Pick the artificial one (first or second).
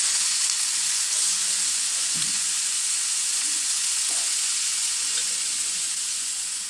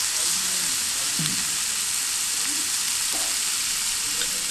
first